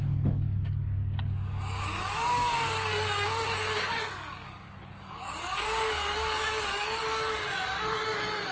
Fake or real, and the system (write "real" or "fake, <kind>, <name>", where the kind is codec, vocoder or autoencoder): fake, codec, DAC